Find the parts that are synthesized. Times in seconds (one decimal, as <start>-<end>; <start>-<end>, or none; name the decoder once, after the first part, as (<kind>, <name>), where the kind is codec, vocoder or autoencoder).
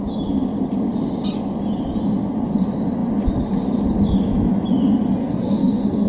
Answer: 5.2-6.1 (codec, SNAC)